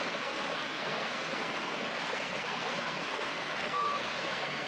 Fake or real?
fake